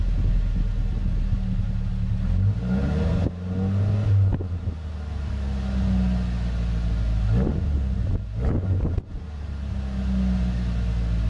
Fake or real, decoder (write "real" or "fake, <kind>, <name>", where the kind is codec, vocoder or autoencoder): real